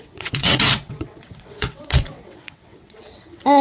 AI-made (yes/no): yes